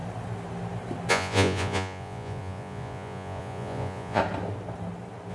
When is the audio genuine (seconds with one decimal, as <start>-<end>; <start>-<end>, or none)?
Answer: 0.0-1.1; 4.2-5.3